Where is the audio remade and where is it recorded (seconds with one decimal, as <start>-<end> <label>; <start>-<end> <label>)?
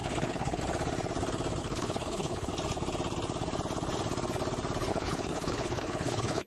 0.0-0.6 remade; 0.6-1.6 recorded; 1.6-2.5 remade; 2.5-4.9 recorded; 4.9-6.5 remade